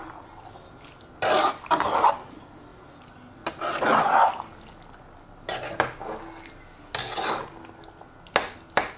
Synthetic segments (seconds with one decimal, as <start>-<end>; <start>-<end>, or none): none